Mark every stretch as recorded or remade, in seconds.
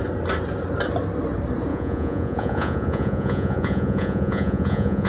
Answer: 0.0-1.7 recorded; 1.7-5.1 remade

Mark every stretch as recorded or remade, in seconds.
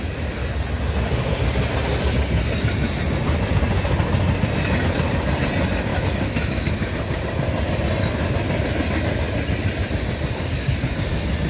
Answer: 0.0-5.9 recorded; 5.9-6.9 remade; 6.9-11.5 recorded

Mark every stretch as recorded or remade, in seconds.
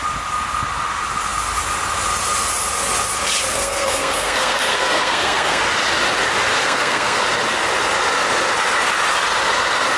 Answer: 0.0-3.5 recorded; 3.5-5.6 remade; 5.6-6.6 recorded; 6.6-7.2 remade; 7.2-10.0 recorded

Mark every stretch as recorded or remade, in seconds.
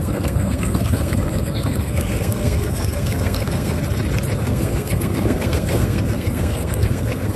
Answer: 0.0-3.8 remade; 3.8-4.4 recorded; 4.4-7.4 remade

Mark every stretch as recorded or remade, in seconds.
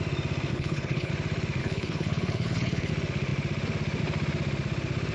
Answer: 0.0-0.5 recorded; 0.5-1.1 remade; 1.1-1.6 recorded; 1.6-2.9 remade; 2.9-5.1 recorded